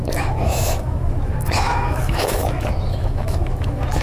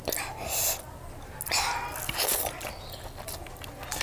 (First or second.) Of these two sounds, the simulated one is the first